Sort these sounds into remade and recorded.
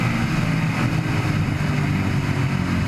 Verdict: recorded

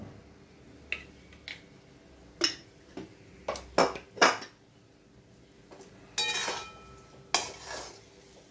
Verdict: recorded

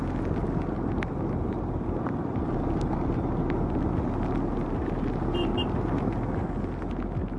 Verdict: recorded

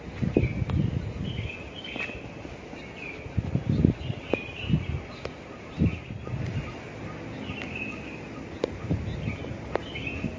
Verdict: recorded